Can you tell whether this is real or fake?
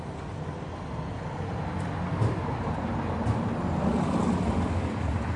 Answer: real